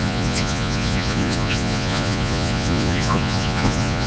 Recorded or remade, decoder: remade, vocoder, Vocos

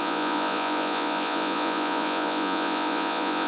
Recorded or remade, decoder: remade, vocoder, Vocos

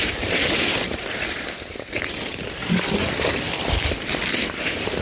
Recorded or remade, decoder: recorded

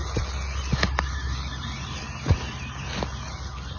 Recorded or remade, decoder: recorded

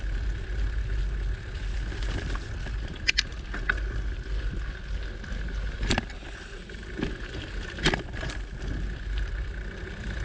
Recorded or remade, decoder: recorded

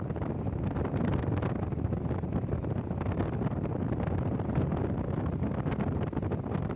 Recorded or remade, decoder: recorded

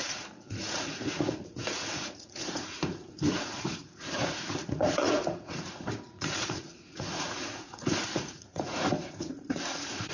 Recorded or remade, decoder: remade, vocoder, Vocos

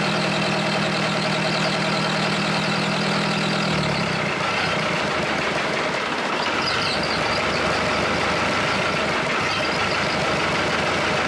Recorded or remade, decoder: recorded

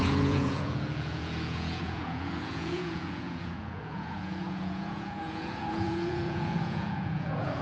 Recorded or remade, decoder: remade, vocoder, Vocos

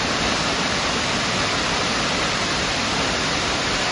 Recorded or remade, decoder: recorded